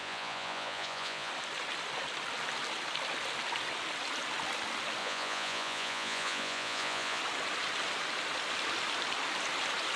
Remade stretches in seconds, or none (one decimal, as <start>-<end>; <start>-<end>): 0.0-1.3; 5.0-7.2